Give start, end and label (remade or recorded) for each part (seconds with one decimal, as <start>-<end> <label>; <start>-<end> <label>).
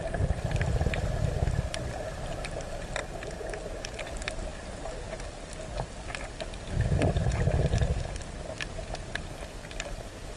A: 0.0-10.4 recorded